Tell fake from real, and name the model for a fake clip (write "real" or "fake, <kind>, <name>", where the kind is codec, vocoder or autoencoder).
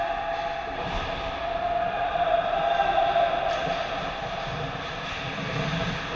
real